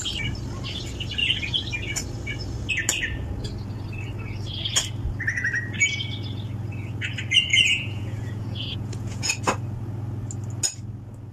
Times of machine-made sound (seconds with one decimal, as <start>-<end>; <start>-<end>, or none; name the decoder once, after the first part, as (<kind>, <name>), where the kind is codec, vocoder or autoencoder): 7.5-9.3 (vocoder, Vocos)